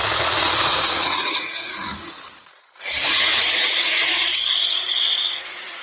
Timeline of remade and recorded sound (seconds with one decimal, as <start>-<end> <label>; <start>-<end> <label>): 0.0-5.8 remade